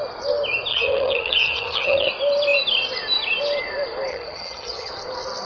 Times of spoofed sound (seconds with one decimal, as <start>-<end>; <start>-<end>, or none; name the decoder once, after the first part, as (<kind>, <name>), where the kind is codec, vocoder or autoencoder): 0.7-2.1 (vocoder, HiFi-GAN); 4.1-4.9